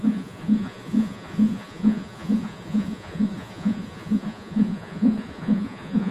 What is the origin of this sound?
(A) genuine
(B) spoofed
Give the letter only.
B